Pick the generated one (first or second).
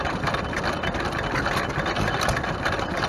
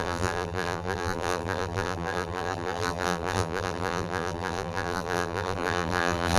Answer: second